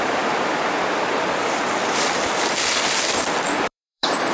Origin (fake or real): fake